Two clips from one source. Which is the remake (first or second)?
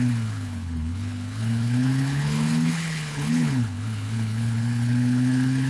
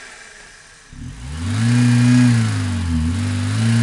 first